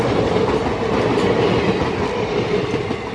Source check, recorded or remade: recorded